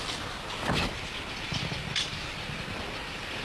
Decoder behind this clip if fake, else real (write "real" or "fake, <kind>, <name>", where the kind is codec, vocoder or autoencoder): real